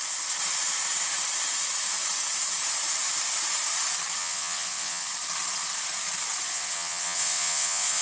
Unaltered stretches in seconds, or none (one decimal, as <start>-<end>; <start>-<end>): 0.0-4.2; 5.1-6.5